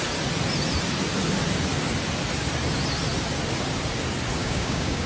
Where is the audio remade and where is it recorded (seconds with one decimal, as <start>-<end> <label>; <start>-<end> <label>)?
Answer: 0.0-4.4 recorded; 4.4-5.1 remade